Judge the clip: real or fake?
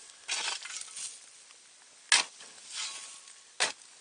real